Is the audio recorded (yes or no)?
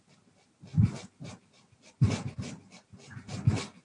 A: yes